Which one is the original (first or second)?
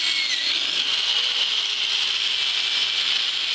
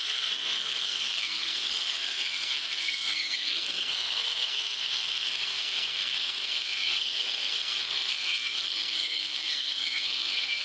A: first